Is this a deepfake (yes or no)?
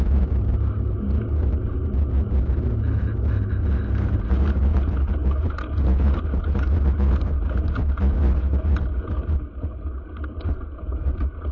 no